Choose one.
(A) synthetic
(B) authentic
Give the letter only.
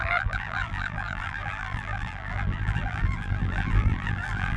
A